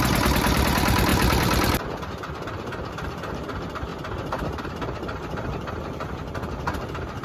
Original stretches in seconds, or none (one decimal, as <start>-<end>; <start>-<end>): 1.1-2.1; 3.9-4.7